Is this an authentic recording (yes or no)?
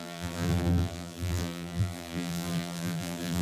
no